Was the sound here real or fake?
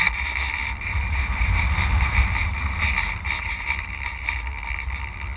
real